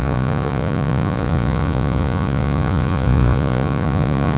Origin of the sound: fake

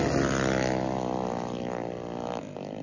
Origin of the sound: real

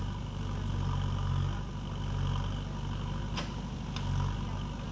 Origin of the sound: real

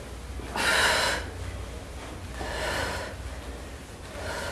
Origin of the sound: real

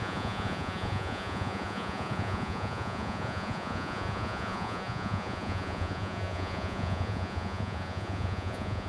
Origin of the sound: fake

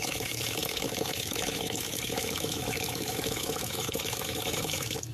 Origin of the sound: fake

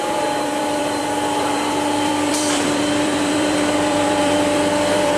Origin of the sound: fake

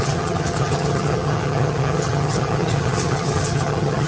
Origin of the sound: fake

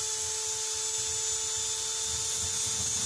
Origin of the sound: real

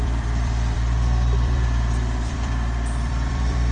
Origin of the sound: fake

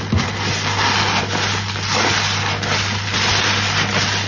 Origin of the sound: real